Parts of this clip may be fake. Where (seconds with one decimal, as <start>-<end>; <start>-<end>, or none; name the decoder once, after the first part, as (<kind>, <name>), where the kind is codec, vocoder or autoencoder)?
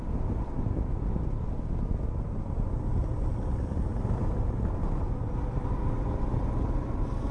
none